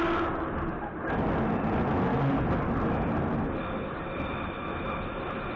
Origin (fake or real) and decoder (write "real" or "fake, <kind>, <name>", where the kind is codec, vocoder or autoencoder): real